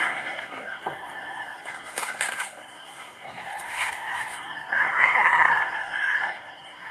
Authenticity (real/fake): fake